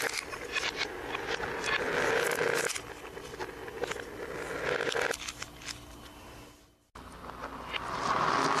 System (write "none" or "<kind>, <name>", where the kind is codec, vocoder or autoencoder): none